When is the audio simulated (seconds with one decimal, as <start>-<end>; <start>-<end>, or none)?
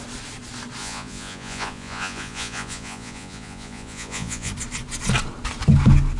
0.8-4.5